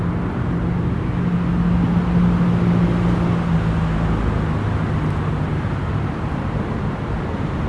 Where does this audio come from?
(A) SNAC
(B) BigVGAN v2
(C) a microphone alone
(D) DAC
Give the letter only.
C